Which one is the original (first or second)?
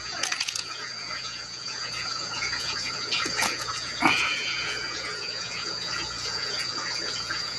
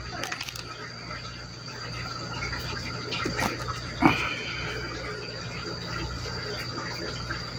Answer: second